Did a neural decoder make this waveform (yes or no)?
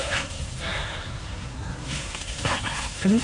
yes